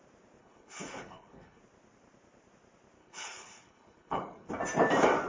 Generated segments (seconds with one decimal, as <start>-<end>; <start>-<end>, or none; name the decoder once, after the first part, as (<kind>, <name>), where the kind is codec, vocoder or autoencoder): 0.4-1.6 (codec, HILCodec); 3.0-4.5